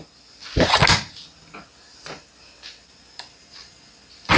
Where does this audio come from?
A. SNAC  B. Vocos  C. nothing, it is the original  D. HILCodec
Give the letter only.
C